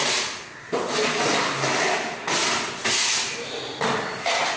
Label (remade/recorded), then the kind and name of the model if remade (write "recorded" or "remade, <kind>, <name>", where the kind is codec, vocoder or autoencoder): recorded